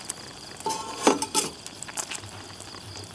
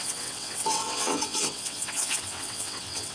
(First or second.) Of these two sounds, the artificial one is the second